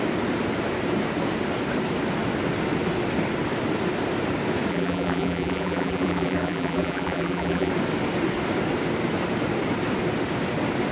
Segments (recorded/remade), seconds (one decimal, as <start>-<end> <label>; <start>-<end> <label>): 0.0-4.7 recorded; 4.7-7.7 remade; 7.7-10.9 recorded